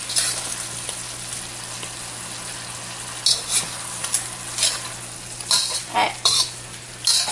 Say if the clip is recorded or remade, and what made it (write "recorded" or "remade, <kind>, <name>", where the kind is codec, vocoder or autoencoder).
recorded